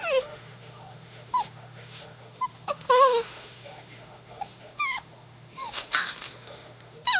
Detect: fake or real fake